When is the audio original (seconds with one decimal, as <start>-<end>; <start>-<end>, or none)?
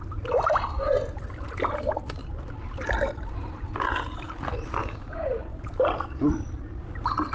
0.0-4.8; 5.4-7.3